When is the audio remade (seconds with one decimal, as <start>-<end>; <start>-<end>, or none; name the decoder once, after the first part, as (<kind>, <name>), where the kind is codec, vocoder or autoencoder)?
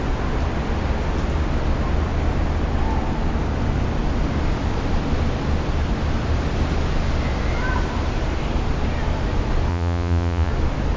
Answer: 9.7-10.5 (vocoder, Vocos)